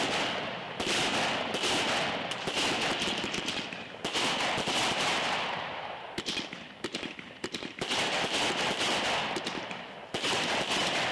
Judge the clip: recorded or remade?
recorded